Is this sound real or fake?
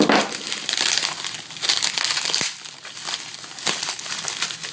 real